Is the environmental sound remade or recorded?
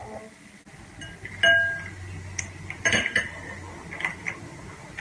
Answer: recorded